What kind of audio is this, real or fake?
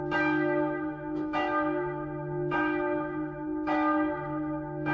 fake